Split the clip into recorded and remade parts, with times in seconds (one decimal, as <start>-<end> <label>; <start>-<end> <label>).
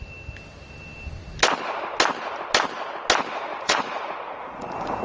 0.0-3.5 recorded; 3.5-5.0 remade